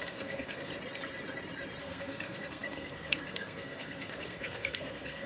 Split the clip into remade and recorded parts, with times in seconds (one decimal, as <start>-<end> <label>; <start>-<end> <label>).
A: 0.0-0.7 remade; 0.7-1.8 recorded; 1.8-5.3 remade

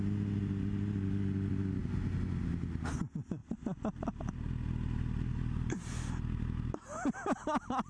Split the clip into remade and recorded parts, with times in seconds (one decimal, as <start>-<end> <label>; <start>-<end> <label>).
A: 0.0-7.9 recorded